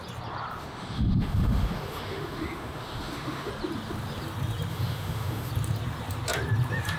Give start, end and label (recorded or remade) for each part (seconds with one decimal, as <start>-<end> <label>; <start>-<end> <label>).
0.0-0.6 recorded; 0.6-3.5 remade; 3.5-4.7 recorded; 4.7-5.5 remade; 5.5-7.0 recorded